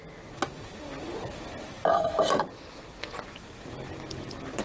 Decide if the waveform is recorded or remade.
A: recorded